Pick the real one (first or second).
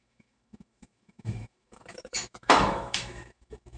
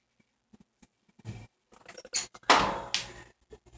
second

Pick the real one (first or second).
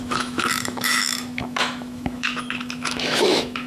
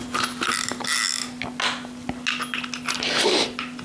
second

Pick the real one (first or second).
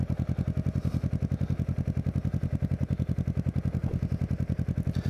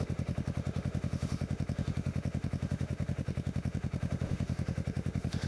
first